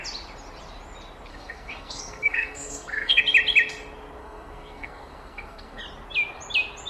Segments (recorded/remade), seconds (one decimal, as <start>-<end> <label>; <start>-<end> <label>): 0.0-1.3 recorded; 1.3-3.2 remade; 3.2-4.2 recorded; 4.2-5.8 remade; 5.8-6.9 recorded